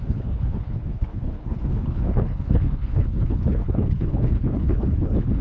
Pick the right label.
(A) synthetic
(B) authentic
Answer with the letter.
A